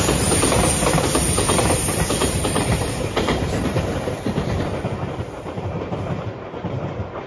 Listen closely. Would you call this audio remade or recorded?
remade